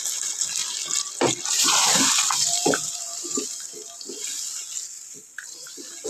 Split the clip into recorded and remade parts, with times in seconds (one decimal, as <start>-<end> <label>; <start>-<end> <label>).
0.0-0.6 recorded; 0.6-4.1 remade; 4.1-6.1 recorded